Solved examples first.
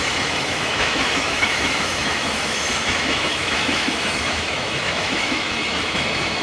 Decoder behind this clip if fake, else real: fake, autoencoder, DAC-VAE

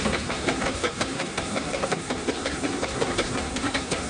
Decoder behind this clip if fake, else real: fake, codec, SNAC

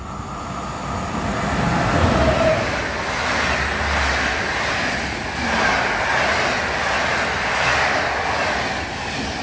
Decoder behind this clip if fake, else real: real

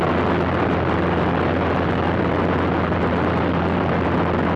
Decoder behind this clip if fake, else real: real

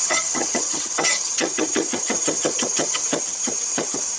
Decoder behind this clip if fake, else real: fake, vocoder, HiFi-GAN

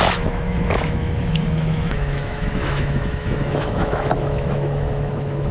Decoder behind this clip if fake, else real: fake, autoencoder, DAC-VAE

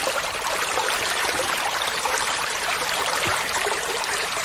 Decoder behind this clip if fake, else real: fake, vocoder, BigVGAN v2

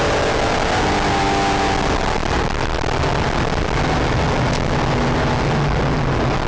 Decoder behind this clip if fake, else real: real